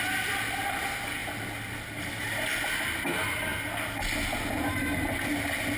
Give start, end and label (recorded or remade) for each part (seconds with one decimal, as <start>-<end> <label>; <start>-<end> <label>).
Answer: 0.0-5.8 recorded